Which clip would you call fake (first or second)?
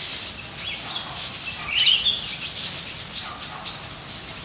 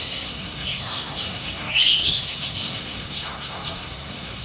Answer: second